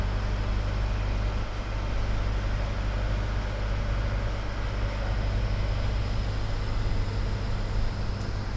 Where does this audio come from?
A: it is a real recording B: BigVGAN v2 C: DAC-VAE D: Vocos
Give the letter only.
A